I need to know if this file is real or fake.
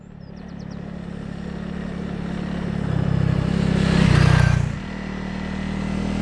real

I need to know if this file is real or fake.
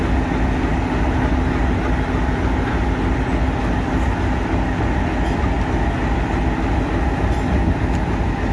real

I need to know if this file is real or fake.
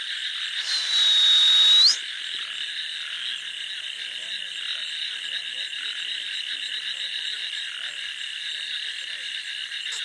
real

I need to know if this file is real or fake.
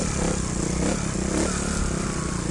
real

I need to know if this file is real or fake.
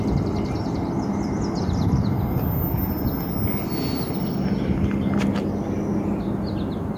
real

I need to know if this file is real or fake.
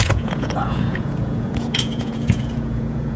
fake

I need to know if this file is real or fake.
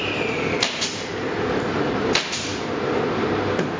real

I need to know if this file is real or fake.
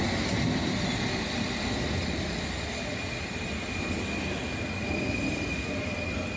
real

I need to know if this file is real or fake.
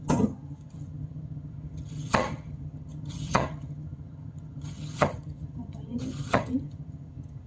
fake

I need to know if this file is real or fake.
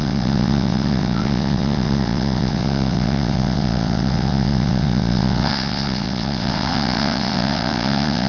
fake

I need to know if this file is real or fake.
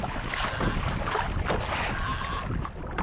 real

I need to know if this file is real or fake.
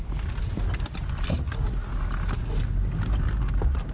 real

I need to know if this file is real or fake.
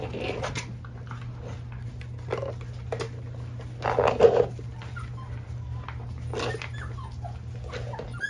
real